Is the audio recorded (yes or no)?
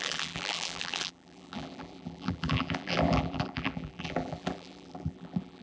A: no